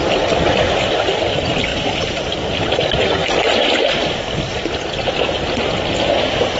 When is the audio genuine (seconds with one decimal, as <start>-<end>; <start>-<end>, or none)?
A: 0.0-6.6

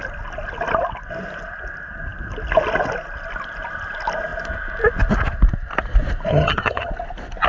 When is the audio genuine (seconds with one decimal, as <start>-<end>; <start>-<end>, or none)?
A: 0.0-6.3; 6.9-7.5

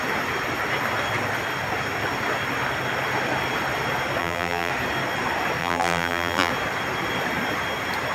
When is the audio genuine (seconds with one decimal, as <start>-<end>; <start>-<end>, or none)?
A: 0.0-4.2; 4.7-5.6; 6.5-8.1

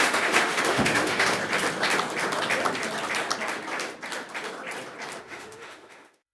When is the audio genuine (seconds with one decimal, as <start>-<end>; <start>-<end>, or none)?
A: 1.4-5.2

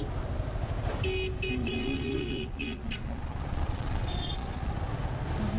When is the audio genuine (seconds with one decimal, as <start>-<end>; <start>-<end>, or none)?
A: 0.0-1.6; 4.7-5.6

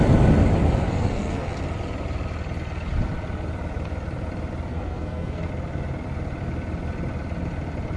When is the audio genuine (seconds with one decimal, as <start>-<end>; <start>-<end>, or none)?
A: 0.0-0.9; 1.5-4.7; 5.5-8.0